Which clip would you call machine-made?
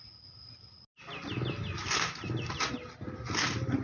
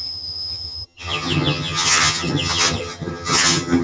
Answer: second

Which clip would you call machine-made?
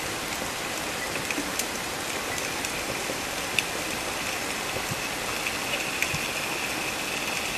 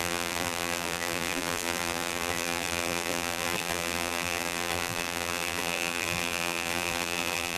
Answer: second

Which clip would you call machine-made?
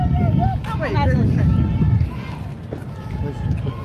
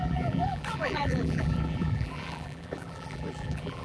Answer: second